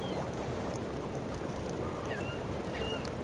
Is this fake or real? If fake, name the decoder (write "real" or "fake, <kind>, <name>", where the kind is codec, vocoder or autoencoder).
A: fake, vocoder, BigVGAN v2